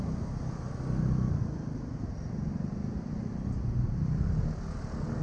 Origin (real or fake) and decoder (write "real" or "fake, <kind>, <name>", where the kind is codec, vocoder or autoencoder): real